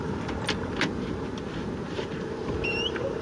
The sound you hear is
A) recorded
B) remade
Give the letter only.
B